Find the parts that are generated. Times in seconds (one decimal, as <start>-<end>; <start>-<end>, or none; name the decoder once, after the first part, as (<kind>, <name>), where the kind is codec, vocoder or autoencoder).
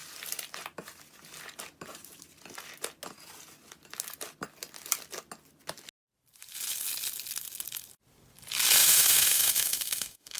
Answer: 8.8-10.4 (autoencoder, DAC-VAE)